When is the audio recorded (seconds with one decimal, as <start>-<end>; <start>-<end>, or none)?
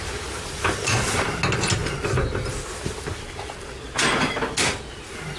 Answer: 0.0-5.4